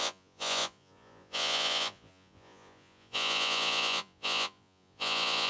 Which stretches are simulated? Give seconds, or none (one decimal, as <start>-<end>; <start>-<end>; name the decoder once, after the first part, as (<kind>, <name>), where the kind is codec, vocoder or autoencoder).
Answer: 0.0-5.5 (vocoder, Vocos)

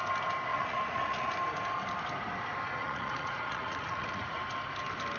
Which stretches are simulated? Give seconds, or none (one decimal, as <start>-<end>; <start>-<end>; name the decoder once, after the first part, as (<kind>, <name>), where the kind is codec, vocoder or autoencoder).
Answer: 0.5-1.3 (vocoder, Vocos); 2.8-4.4

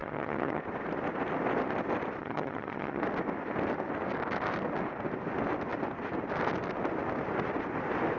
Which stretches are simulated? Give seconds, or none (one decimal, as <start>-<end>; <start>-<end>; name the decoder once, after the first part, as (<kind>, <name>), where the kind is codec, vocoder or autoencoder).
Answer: 0.0-0.6 (vocoder, HiFi-GAN); 2.2-3.0

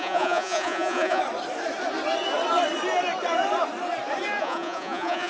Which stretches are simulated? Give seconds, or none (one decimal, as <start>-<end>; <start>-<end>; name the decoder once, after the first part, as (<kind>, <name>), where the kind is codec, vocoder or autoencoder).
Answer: 0.0-1.2 (vocoder, Vocos); 4.4-5.3

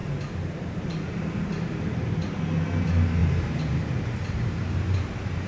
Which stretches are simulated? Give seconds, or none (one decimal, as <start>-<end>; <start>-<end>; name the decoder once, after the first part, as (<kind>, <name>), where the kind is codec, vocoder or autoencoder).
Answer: 0.0-1.2 (vocoder, BigVGAN v2); 3.2-5.5